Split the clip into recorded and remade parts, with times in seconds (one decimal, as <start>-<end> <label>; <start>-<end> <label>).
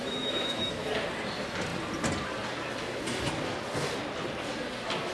0.0-0.9 remade; 0.9-5.1 recorded